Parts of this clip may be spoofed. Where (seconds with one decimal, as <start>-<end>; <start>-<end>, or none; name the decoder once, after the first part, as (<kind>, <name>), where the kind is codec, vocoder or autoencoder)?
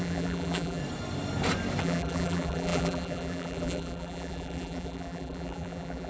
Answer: 0.0-0.8 (vocoder, BigVGAN v2); 1.8-6.1